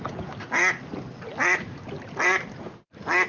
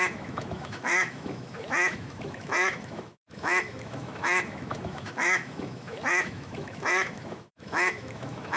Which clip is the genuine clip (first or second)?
first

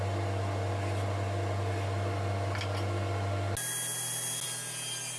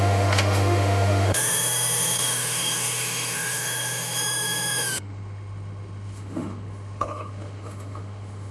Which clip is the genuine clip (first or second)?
first